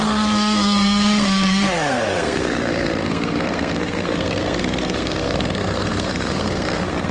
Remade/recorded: remade